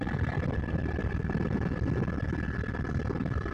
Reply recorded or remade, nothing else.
recorded